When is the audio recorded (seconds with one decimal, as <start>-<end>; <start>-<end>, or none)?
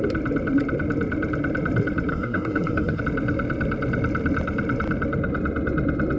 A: 0.0-2.1; 3.0-6.2